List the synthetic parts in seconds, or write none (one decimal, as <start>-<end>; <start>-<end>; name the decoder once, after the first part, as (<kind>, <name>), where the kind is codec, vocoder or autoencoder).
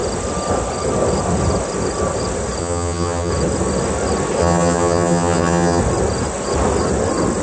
2.6-3.3 (vocoder, HiFi-GAN); 4.4-5.8